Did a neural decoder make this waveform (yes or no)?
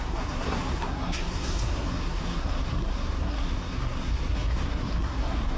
yes